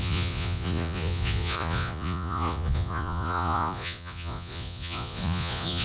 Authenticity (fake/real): fake